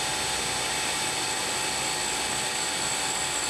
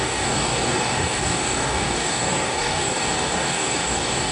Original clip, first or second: first